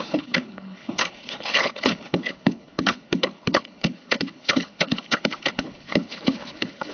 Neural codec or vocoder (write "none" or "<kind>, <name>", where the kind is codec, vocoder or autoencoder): codec, HILCodec